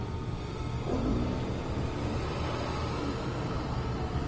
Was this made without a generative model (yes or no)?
yes